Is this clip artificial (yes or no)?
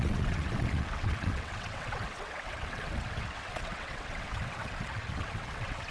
yes